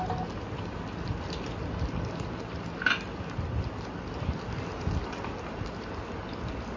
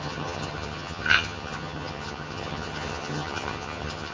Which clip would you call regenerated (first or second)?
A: second